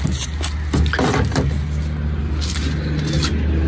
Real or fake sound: real